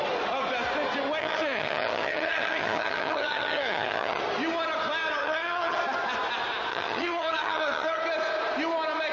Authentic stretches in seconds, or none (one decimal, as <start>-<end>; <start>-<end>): 0.0-1.2; 4.2-5.2; 5.8-6.7; 8.0-9.1